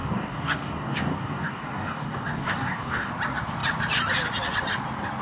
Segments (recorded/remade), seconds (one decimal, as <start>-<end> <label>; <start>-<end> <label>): 0.0-3.1 remade; 3.1-5.2 recorded

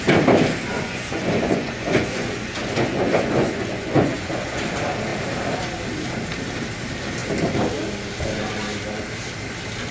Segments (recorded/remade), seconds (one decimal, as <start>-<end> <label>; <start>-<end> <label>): 0.0-0.7 recorded; 0.7-4.6 remade; 4.6-9.9 recorded

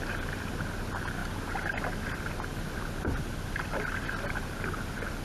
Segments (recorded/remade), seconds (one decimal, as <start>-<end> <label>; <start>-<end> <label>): 0.0-5.2 recorded